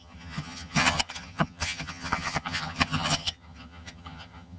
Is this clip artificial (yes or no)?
yes